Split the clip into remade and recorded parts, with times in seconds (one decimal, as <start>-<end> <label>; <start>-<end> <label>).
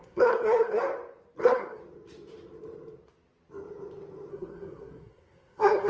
0.0-0.8 remade; 0.8-1.4 recorded; 1.4-1.8 remade; 1.8-4.3 recorded; 4.3-5.9 remade